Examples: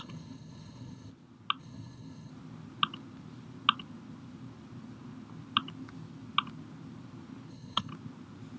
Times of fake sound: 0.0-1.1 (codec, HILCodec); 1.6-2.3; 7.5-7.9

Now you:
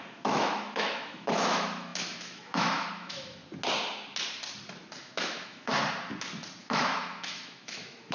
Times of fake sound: 0.0-3.4 (autoencoder, DAC-VAE); 5.0-5.7; 6.6-8.1

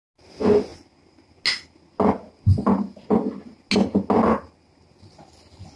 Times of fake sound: none